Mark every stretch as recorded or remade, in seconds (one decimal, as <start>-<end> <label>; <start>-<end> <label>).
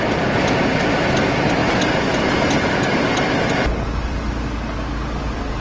0.0-5.6 recorded